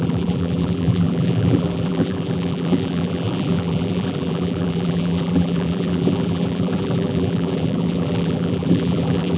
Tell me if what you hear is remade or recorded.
remade